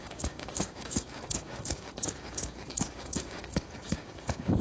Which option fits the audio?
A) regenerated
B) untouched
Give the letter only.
A